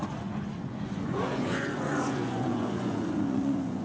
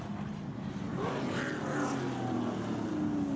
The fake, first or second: first